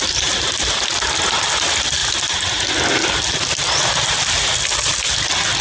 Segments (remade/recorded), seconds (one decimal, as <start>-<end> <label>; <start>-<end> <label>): 0.0-5.6 recorded